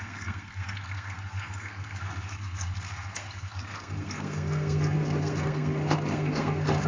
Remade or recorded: remade